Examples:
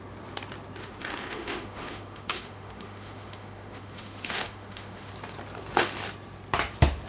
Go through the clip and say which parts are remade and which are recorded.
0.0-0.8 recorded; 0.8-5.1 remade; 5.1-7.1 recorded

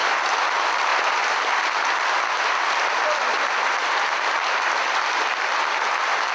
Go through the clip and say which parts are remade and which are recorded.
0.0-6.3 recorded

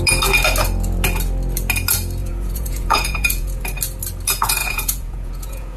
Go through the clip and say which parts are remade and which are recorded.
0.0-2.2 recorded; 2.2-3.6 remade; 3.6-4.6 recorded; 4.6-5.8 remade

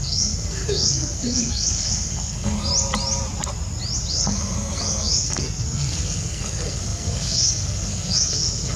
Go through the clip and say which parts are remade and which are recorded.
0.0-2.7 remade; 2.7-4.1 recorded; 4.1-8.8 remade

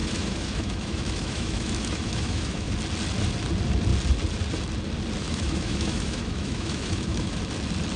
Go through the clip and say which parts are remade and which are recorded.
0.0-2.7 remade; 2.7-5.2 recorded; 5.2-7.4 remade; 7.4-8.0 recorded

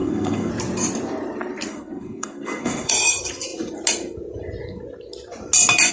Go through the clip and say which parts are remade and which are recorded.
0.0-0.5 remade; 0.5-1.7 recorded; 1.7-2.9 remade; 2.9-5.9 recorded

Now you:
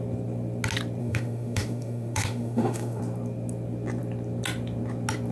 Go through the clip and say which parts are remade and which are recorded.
0.0-1.0 recorded; 1.0-3.0 remade; 3.0-5.3 recorded

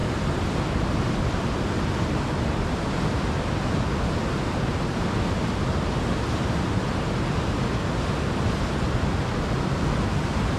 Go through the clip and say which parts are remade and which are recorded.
0.0-10.6 recorded